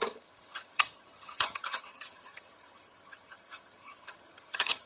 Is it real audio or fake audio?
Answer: fake